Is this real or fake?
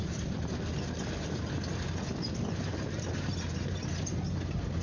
real